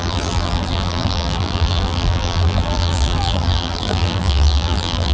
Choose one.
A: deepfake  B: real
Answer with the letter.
A